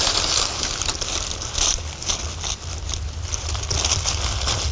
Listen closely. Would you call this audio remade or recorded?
recorded